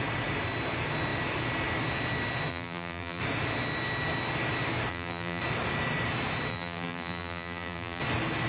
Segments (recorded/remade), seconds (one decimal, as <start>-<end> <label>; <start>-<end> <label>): 0.0-2.5 recorded; 2.5-3.2 remade; 3.2-4.9 recorded; 4.9-5.4 remade; 5.4-6.5 recorded; 6.5-8.0 remade; 8.0-8.5 recorded